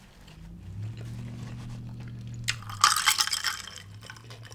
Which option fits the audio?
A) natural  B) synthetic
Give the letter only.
A